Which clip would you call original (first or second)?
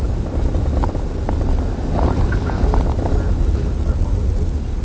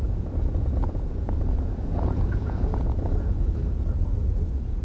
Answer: first